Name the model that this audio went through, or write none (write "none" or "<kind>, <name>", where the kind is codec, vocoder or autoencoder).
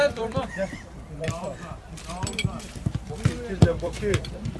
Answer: vocoder, BigVGAN v2